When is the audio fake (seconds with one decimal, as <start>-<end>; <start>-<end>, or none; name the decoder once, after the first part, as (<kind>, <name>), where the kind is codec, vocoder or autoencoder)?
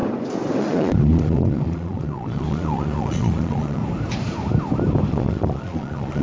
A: 0.6-3.8 (vocoder, Vocos); 5.1-6.2